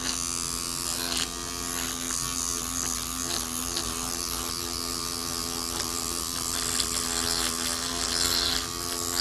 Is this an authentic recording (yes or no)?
yes